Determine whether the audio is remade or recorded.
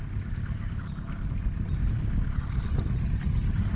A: recorded